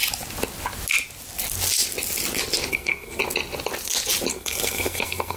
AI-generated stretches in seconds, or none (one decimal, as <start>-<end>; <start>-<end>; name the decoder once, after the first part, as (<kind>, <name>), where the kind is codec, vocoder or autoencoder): 2.7-3.2 (codec, SNAC); 4.3-5.4